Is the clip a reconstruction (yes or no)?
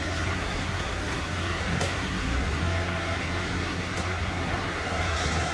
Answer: yes